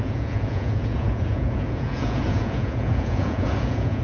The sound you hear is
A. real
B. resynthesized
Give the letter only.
B